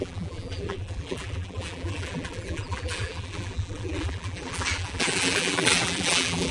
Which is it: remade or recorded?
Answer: remade